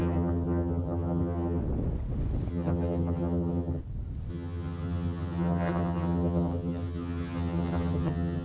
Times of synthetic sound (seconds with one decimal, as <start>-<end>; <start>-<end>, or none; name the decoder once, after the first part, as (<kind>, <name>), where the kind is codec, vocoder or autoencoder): 0.0-1.6 (vocoder, HiFi-GAN); 2.5-3.8; 4.3-8.4